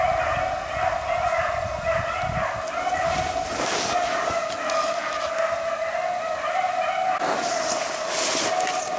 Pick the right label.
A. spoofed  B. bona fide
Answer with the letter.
B